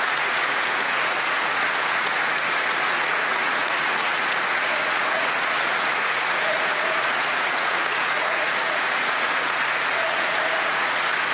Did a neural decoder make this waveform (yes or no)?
yes